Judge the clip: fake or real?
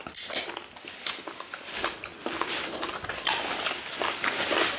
fake